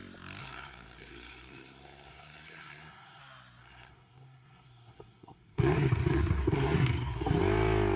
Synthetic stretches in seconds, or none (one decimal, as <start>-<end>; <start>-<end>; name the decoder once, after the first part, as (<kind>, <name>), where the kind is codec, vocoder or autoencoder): 0.4-3.2 (codec, SNAC); 3.6-7.4